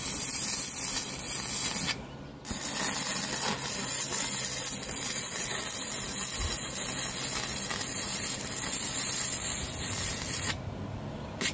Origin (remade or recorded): recorded